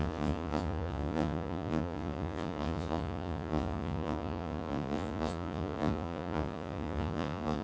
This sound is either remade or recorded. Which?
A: remade